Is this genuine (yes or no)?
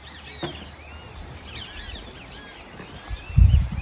yes